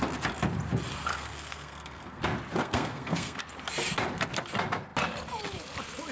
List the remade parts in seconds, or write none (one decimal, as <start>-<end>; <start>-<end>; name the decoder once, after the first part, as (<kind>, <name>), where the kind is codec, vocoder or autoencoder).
1.1-2.2 (codec, SNAC); 2.6-3.4